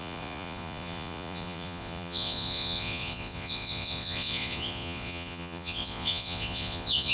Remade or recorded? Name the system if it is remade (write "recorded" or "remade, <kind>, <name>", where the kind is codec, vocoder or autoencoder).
remade, vocoder, Vocos